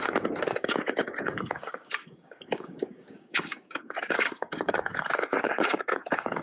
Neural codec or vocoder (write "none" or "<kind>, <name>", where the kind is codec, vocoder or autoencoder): codec, DAC